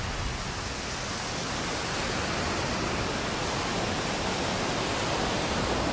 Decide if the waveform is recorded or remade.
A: recorded